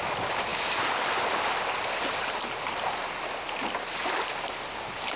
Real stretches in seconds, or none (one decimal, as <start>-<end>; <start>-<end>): 0.0-5.2